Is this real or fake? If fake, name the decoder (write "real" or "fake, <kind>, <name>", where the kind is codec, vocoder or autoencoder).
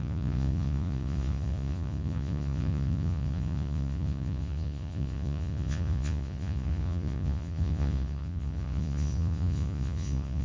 fake, vocoder, Vocos